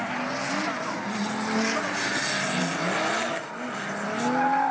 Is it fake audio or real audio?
real